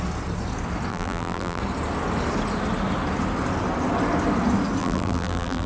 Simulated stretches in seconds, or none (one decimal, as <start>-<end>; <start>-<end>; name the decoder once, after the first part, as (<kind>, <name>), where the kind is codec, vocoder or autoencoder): 0.9-1.6 (vocoder, BigVGAN v2); 4.8-5.7